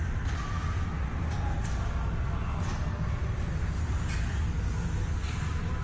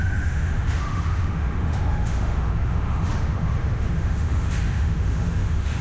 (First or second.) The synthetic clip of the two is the second